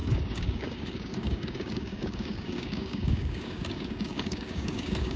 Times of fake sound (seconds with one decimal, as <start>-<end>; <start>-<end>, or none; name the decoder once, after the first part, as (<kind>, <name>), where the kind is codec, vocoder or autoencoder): 0.0-5.2 (codec, DAC)